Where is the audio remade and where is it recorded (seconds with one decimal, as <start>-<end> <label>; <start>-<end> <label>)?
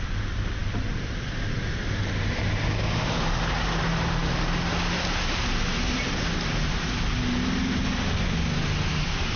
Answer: 0.0-9.4 recorded